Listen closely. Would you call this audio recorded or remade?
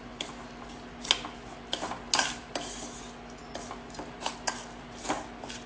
recorded